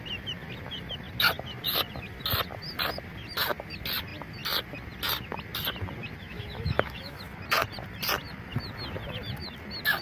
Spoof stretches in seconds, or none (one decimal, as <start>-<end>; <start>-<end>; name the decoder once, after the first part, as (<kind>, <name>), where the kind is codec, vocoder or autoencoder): 6.2-7.2 (autoencoder, DAC-VAE)